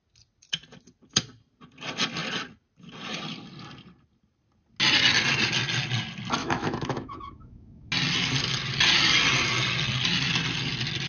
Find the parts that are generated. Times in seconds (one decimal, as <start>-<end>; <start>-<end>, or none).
6.4-7.9